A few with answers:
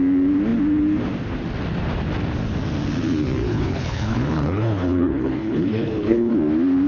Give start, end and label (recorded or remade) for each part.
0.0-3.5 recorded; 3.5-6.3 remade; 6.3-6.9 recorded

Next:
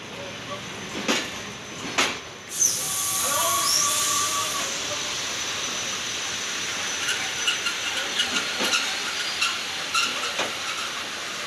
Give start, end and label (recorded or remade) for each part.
0.0-11.5 recorded

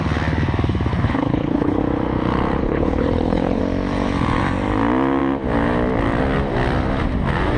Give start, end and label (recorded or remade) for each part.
0.0-0.9 recorded; 0.9-1.8 remade; 1.8-2.6 recorded; 2.6-3.6 remade; 3.6-7.6 recorded

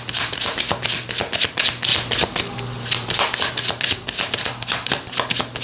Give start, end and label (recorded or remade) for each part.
0.0-4.4 recorded; 4.4-4.9 remade; 4.9-5.6 recorded

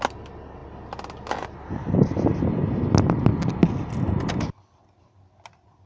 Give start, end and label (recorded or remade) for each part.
0.0-5.9 recorded

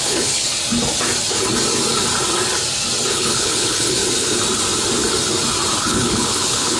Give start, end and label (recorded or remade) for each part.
0.0-0.5 remade; 0.5-3.1 recorded; 3.1-4.0 remade; 4.0-5.8 recorded; 5.8-6.8 remade

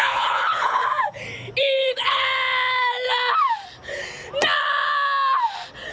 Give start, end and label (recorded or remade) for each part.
0.0-0.8 remade; 0.8-1.6 recorded; 1.6-2.2 remade; 2.2-5.9 recorded